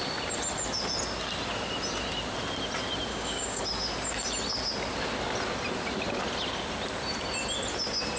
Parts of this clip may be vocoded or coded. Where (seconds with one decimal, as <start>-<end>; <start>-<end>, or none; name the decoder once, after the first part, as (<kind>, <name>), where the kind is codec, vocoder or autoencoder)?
3.1-3.6 (codec, DAC)